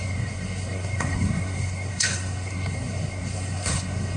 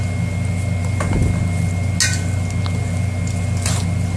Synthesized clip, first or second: first